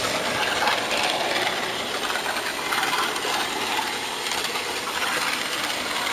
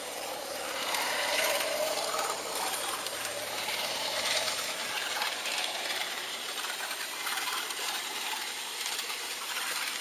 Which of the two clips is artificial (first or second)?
second